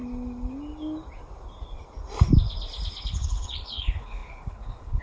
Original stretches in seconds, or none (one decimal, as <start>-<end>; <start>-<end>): 0.0-3.0